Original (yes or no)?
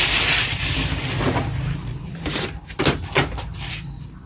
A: no